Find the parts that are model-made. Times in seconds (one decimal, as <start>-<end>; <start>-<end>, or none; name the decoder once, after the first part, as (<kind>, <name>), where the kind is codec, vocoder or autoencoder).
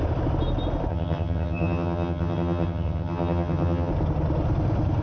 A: 0.9-3.9 (vocoder, HiFi-GAN)